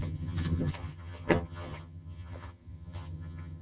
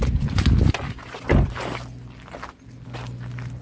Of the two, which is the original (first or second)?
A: second